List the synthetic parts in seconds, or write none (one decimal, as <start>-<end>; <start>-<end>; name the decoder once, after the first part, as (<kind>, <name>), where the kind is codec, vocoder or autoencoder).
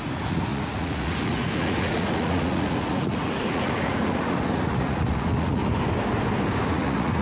0.0-5.6 (vocoder, Vocos); 6.7-7.2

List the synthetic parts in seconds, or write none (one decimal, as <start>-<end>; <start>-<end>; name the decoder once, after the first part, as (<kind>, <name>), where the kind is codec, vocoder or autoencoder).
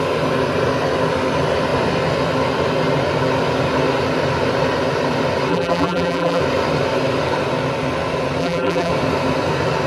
5.5-6.4 (vocoder, BigVGAN v2); 8.4-8.9